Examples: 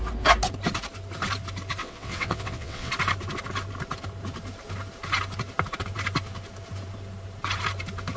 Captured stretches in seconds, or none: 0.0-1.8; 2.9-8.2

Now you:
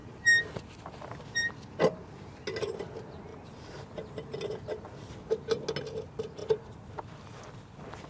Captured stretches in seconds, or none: 0.0-8.1

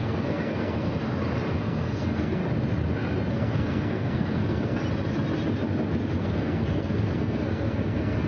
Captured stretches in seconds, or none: 1.0-1.5; 2.4-3.3; 4.8-6.1